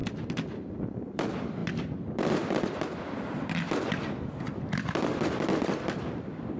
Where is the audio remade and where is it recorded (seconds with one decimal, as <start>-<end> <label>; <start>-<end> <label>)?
0.0-6.6 remade